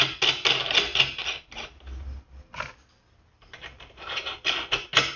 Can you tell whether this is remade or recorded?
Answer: recorded